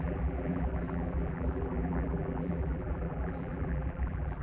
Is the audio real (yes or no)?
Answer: no